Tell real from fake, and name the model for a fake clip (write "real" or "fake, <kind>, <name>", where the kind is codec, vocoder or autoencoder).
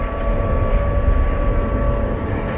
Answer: real